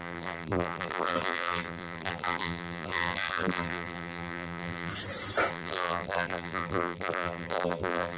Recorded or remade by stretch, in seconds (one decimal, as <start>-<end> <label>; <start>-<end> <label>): 0.0-4.9 remade; 4.9-5.5 recorded; 5.5-8.2 remade